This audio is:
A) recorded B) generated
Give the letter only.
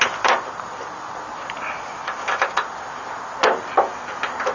A